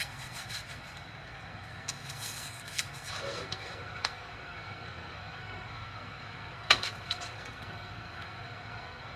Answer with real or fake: fake